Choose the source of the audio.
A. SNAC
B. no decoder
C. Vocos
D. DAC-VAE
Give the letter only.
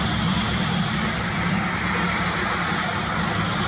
B